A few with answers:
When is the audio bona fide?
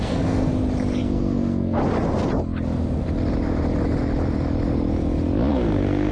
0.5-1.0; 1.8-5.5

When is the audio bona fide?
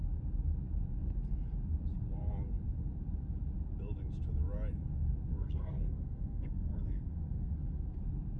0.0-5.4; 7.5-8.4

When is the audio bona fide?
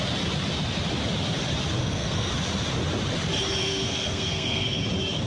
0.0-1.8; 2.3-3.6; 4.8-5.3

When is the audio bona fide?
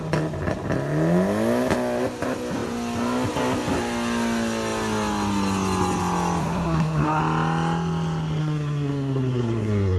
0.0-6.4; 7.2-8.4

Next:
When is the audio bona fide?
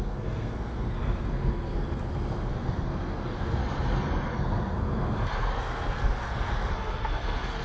none